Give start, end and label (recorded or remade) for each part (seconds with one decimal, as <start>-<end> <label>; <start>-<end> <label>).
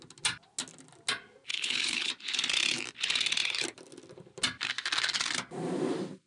0.0-1.5 recorded; 1.5-2.1 remade; 2.1-6.3 recorded